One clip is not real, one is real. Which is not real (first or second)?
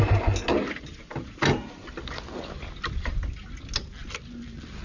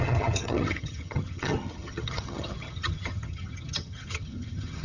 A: second